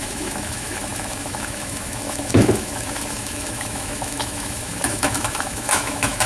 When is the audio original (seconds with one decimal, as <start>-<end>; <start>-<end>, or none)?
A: none

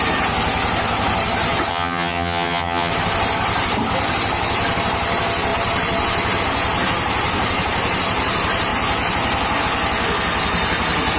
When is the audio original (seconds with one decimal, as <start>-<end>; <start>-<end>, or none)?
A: 0.0-1.7; 2.9-11.2

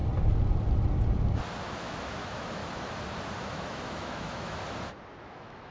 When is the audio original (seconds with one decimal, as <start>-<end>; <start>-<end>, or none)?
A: 0.0-1.8; 2.6-3.4; 4.6-5.2

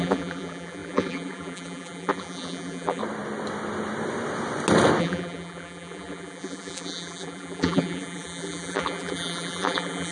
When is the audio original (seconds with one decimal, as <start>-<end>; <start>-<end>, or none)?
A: 3.0-5.0

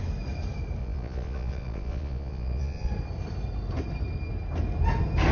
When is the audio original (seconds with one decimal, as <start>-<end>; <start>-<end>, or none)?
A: 0.0-0.8; 2.9-5.3